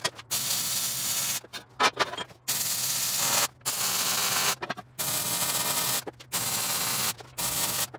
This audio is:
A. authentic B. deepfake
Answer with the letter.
A